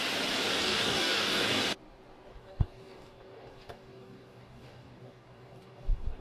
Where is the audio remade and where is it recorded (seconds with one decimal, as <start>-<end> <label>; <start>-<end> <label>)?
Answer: 0.0-0.6 recorded; 0.6-1.6 remade; 1.6-2.3 recorded; 2.3-6.2 remade